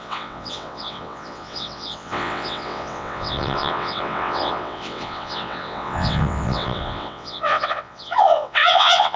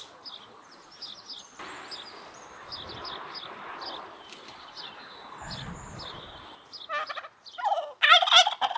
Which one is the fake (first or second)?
first